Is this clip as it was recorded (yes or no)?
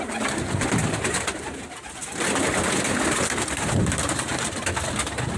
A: no